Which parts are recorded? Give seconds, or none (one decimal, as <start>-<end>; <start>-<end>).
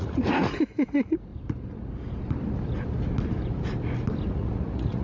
1.3-4.3